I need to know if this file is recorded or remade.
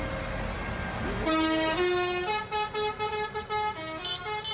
recorded